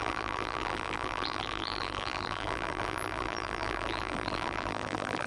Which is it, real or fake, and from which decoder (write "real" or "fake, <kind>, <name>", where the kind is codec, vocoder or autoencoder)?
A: fake, vocoder, BigVGAN v2